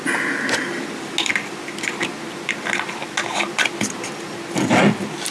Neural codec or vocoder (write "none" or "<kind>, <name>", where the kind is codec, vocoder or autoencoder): none